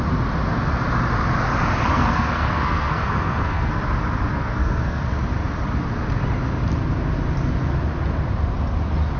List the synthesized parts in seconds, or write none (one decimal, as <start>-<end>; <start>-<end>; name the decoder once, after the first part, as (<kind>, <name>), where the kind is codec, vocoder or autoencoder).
1.9-3.8 (codec, SNAC); 4.3-5.0